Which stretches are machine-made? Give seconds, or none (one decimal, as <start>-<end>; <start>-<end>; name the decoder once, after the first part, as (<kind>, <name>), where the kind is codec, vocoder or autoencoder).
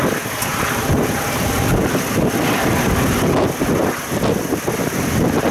0.5-3.8 (vocoder, BigVGAN v2)